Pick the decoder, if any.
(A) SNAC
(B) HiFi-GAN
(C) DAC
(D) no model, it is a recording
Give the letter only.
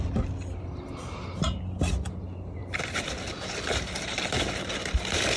D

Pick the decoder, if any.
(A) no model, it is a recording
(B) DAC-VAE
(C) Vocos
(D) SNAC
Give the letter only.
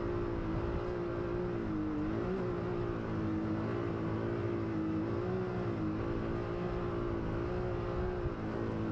A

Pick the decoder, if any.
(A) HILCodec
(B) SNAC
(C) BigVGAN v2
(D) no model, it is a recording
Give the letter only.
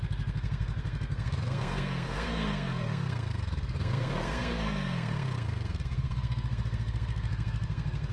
B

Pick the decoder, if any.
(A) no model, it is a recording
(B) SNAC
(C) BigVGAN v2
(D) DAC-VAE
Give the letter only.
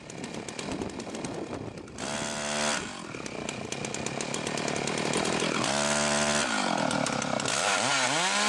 A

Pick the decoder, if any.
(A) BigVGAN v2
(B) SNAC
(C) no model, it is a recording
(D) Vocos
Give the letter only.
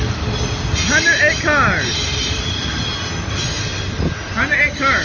C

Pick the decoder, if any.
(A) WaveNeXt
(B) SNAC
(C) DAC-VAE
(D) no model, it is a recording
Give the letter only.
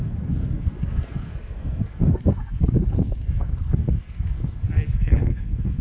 B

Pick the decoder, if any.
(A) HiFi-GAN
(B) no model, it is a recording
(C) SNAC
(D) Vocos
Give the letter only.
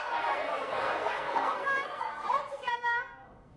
C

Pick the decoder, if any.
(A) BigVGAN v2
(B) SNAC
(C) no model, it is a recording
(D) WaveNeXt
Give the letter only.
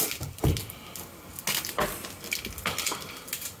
C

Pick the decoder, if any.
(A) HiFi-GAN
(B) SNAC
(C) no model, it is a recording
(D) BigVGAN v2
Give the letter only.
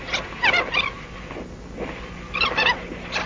C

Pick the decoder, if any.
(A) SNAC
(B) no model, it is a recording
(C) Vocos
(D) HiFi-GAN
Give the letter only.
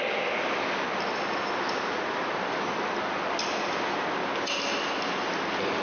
B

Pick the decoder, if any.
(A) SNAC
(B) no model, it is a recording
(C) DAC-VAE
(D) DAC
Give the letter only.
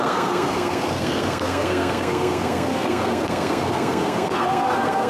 A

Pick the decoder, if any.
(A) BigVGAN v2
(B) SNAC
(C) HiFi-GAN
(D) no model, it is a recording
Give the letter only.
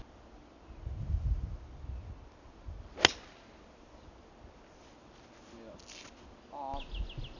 D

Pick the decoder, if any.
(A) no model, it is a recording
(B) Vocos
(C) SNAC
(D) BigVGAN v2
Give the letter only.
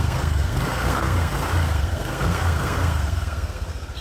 C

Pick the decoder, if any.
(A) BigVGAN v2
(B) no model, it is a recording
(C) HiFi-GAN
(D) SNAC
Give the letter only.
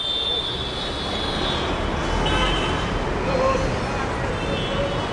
B